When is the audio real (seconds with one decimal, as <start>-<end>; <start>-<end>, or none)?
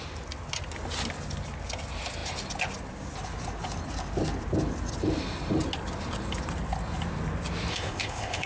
0.0-7.7